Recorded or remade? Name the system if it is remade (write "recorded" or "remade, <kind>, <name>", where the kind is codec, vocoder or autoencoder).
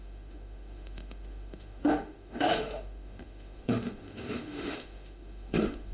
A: remade, autoencoder, DAC-VAE